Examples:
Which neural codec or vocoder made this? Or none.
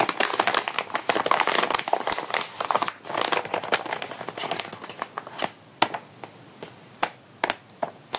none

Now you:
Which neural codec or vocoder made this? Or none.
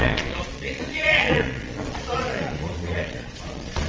vocoder, Vocos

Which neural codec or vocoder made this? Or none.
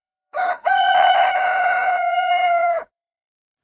vocoder, Vocos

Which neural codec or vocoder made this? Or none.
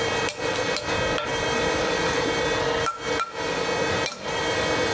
none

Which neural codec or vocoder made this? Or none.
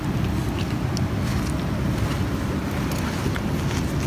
none